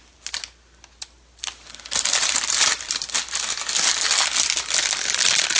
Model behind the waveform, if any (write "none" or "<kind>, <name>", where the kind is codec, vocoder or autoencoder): none